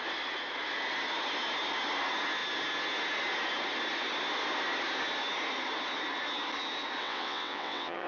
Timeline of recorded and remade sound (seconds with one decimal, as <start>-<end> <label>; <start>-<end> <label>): 0.0-7.0 recorded; 7.0-8.1 remade